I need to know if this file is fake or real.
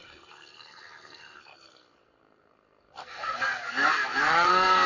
fake